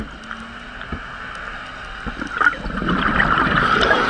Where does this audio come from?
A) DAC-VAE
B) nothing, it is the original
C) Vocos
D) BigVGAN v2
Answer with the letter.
B